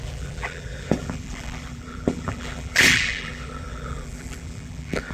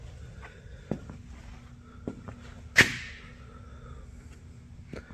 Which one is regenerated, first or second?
first